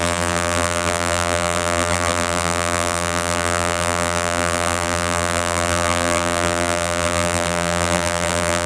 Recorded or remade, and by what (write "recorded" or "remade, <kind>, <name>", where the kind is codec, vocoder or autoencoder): remade, vocoder, BigVGAN v2